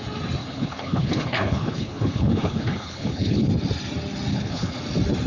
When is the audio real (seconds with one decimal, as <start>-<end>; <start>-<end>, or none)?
0.0-0.4; 3.5-4.3; 4.8-5.3